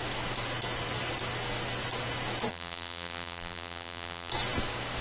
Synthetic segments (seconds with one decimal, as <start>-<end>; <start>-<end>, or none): 2.5-4.3